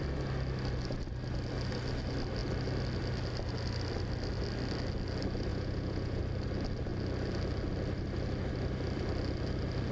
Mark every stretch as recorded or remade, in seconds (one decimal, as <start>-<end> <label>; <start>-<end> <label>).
0.0-5.5 recorded; 5.5-6.2 remade; 6.2-9.9 recorded